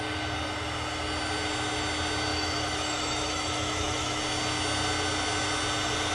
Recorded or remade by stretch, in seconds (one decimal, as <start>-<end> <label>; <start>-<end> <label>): 0.0-2.3 recorded; 2.3-4.2 remade; 4.2-6.1 recorded

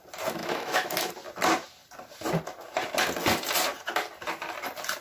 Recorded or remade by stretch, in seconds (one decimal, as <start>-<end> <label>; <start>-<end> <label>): 0.0-0.4 recorded; 0.4-1.1 remade; 1.1-5.0 recorded

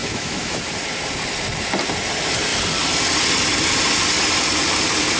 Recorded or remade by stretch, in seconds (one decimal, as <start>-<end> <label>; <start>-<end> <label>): 0.0-0.6 remade; 0.6-5.2 recorded

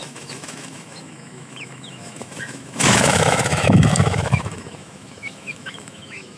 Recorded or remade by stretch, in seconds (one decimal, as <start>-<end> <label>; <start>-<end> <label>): 0.0-6.4 remade

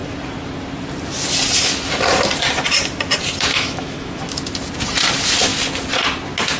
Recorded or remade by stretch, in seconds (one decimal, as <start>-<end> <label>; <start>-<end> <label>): 0.0-3.5 recorded; 3.5-4.2 remade; 4.2-6.6 recorded

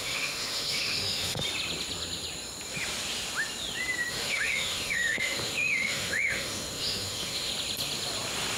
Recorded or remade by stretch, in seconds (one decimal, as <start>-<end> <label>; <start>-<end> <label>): 0.0-1.4 remade; 1.4-4.1 recorded; 4.1-7.5 remade; 7.5-8.6 recorded

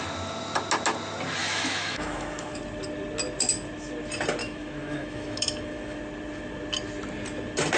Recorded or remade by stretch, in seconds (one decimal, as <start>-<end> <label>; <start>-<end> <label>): 0.0-1.4 recorded; 1.4-2.6 remade; 2.6-4.4 recorded; 4.4-6.0 remade; 6.0-7.8 recorded

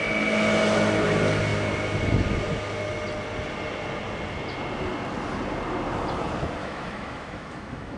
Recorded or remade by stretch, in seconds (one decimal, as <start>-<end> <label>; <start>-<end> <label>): 0.0-6.6 recorded; 6.6-8.0 remade